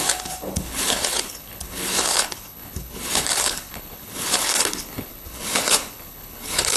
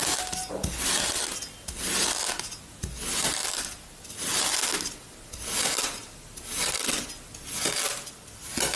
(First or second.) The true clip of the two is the second